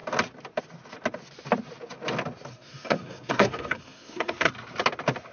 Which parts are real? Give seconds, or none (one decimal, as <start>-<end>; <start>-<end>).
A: 0.0-2.5; 4.5-5.3